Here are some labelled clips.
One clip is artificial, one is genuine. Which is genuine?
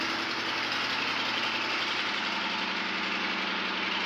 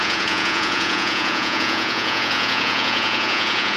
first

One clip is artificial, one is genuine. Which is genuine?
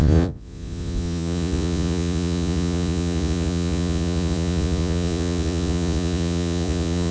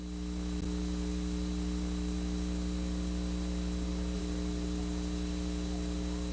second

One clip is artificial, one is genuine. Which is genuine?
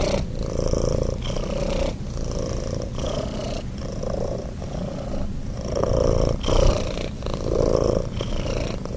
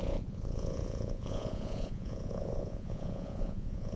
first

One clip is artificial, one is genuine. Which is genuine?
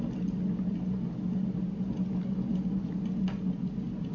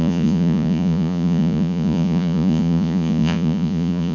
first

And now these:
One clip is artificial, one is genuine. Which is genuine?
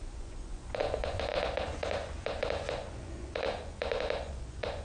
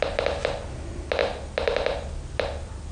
second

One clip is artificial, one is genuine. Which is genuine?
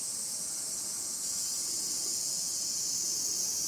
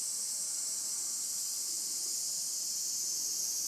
second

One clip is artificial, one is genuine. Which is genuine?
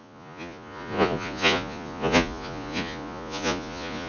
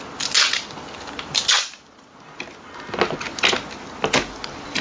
second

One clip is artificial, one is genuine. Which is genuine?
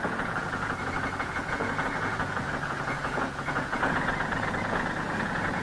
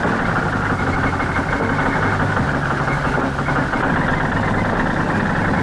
second